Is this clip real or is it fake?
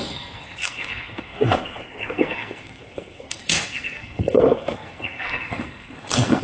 fake